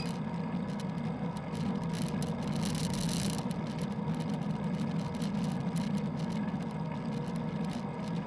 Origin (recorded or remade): recorded